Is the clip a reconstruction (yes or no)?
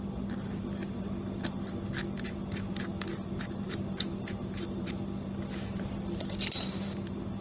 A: no